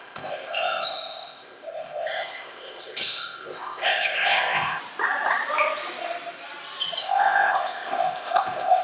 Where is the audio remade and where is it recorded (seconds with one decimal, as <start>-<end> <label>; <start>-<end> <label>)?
0.0-4.8 remade; 4.8-7.0 recorded; 7.0-8.8 remade